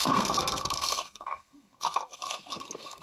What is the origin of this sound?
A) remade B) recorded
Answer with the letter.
A